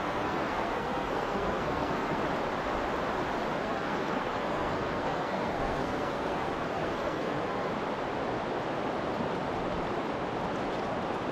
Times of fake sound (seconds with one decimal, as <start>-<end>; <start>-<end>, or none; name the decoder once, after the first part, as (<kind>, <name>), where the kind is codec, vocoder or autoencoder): 0.0-2.2 (codec, SNAC); 3.6-7.7